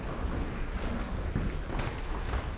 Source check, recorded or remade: recorded